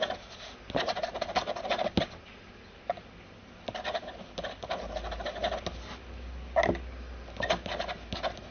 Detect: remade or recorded recorded